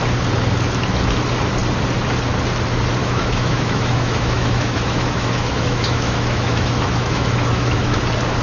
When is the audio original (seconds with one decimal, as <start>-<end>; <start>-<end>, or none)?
0.0-3.0; 8.0-8.4